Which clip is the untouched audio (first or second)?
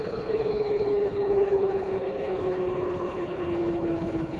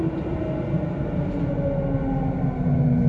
second